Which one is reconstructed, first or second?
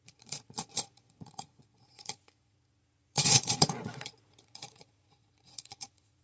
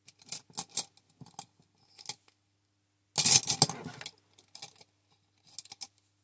first